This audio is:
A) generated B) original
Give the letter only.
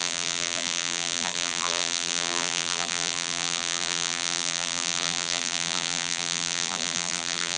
A